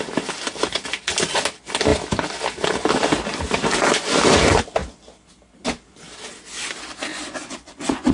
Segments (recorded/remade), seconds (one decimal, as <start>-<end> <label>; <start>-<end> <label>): 0.0-7.1 recorded; 7.1-8.1 remade